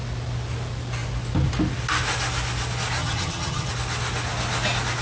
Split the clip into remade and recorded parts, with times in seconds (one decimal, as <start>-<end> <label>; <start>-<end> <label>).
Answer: 0.0-3.0 recorded; 3.0-3.7 remade; 3.7-5.0 recorded